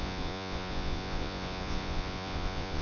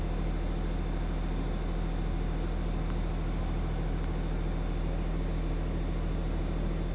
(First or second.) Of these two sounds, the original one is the second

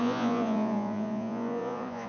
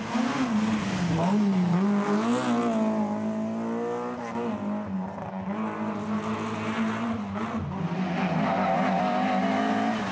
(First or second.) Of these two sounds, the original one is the second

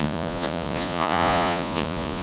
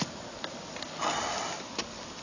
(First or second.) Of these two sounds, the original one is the second